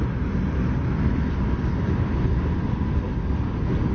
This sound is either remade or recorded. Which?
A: recorded